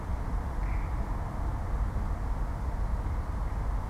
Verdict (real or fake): real